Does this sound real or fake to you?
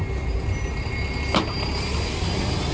real